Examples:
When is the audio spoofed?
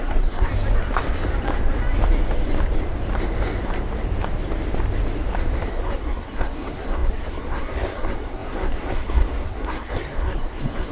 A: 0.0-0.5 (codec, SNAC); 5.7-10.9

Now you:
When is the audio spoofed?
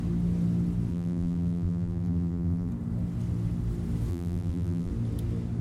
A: 0.9-2.7 (vocoder, BigVGAN v2); 4.1-4.9